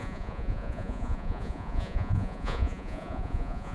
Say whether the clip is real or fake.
fake